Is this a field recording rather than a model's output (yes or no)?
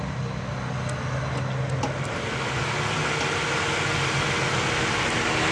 yes